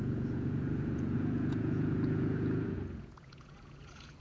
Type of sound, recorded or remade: remade